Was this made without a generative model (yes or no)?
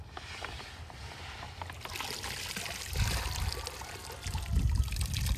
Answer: yes